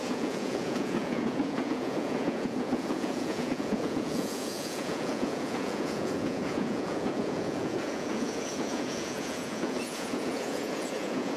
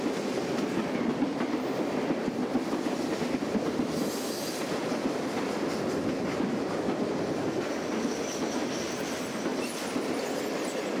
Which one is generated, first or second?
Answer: first